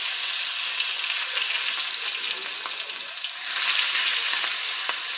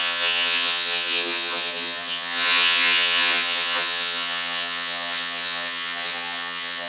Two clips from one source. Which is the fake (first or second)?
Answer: second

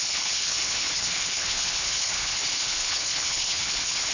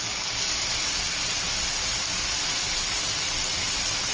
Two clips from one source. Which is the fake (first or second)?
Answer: first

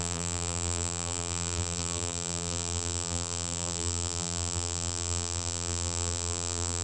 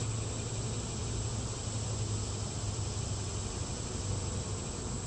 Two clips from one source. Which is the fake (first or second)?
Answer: first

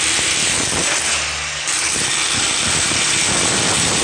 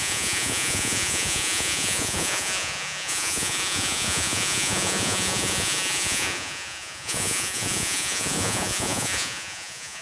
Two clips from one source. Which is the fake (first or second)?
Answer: second